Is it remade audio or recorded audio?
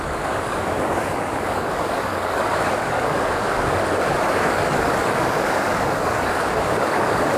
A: remade